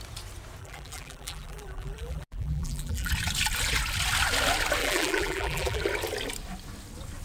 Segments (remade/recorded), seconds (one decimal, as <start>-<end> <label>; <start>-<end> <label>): 0.0-0.6 recorded; 0.6-3.1 remade; 3.1-4.8 recorded; 4.8-5.8 remade; 5.8-7.2 recorded